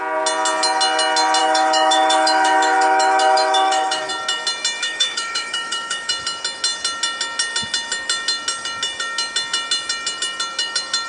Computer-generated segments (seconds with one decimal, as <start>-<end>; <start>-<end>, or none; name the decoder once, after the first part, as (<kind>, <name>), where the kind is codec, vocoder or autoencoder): 1.4-4.1 (autoencoder, DAC-VAE); 4.8-6.1